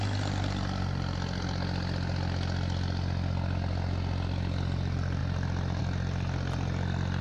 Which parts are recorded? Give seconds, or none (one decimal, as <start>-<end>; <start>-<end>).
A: 0.0-7.2